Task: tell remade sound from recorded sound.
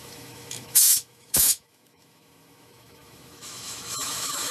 remade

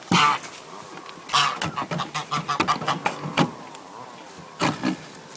recorded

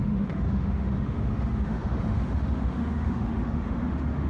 remade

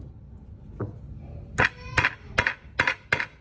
recorded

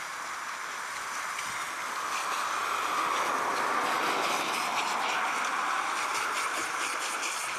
recorded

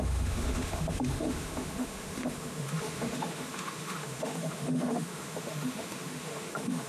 remade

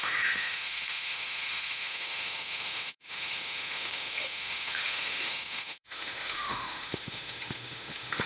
remade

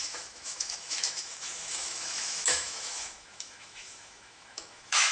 remade